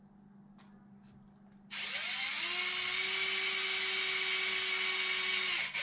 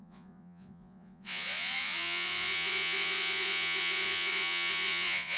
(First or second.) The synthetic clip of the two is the second